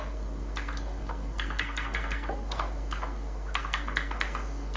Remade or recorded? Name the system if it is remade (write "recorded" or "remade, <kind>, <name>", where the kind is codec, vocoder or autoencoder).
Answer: remade, codec, SNAC